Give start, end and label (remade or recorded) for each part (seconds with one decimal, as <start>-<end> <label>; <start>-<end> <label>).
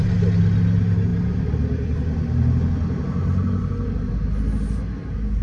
0.0-5.4 recorded